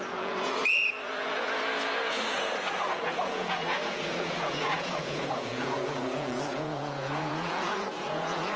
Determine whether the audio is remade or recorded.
remade